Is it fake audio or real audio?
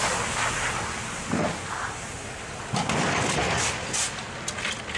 real